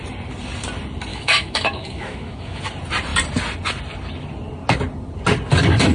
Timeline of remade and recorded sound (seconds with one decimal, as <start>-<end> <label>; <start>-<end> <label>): 0.0-1.1 recorded; 1.1-2.6 remade; 2.6-5.9 recorded